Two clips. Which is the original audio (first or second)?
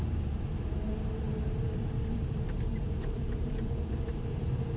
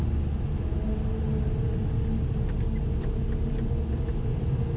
second